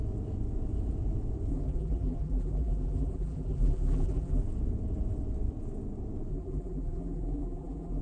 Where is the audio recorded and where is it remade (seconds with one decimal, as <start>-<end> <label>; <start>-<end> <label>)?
0.0-1.5 recorded; 1.5-4.4 remade; 4.4-6.3 recorded; 6.3-8.0 remade